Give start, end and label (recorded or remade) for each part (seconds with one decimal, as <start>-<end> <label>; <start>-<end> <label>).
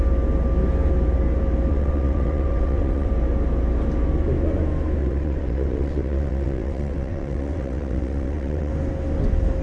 0.0-1.7 recorded; 1.7-3.1 remade; 3.1-5.0 recorded; 5.0-8.7 remade; 8.7-9.6 recorded